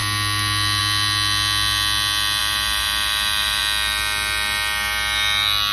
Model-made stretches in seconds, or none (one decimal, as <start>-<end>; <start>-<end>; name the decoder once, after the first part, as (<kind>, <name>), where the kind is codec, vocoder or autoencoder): 2.4-3.6 (vocoder, BigVGAN v2)